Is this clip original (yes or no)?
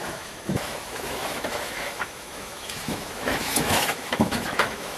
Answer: no